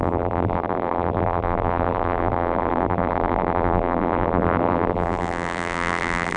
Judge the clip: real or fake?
fake